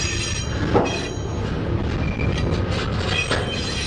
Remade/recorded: recorded